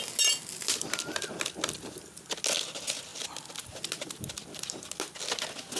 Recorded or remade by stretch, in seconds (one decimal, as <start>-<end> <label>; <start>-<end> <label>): 0.0-5.8 recorded